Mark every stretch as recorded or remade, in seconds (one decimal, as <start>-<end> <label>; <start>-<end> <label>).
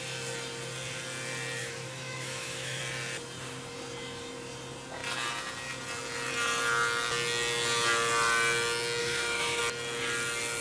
0.0-1.6 recorded; 1.6-2.8 remade; 2.8-9.0 recorded; 9.0-9.6 remade; 9.6-10.6 recorded